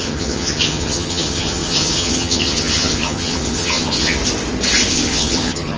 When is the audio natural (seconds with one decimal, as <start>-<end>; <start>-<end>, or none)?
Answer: 4.2-4.9